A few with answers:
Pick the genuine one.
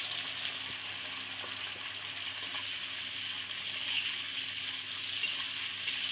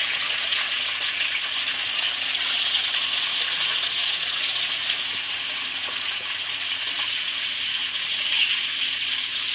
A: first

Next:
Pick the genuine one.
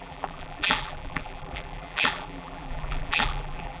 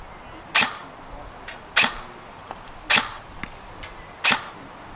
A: second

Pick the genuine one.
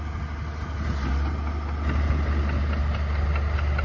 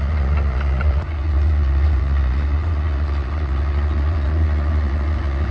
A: first